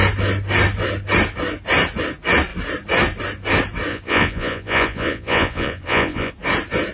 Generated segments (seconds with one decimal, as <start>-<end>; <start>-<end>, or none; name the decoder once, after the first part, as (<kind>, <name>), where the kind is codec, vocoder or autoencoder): 3.9-6.3 (vocoder, Vocos)